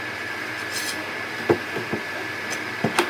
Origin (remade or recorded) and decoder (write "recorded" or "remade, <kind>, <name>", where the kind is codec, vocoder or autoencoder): recorded